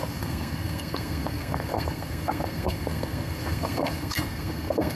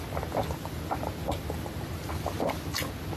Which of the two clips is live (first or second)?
second